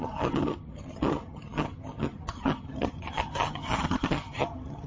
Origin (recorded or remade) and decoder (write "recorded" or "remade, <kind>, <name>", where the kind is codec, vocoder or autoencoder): remade, vocoder, HiFi-GAN